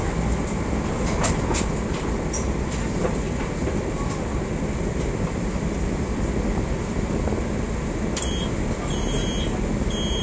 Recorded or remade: recorded